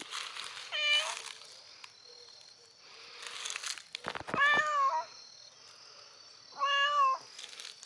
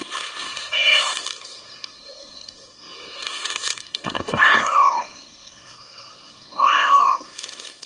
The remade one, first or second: second